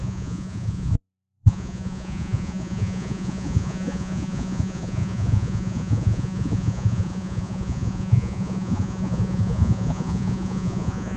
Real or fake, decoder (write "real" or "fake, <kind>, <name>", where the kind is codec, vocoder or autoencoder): fake, vocoder, Vocos